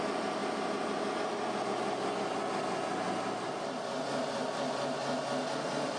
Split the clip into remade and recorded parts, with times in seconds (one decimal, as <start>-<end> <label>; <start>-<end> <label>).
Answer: 0.0-6.0 recorded